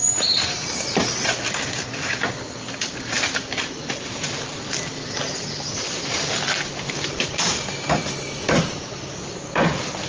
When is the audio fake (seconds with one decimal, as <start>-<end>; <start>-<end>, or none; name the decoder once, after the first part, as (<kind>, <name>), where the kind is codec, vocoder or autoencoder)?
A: none